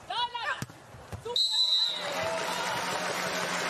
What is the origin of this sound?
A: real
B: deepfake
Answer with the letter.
A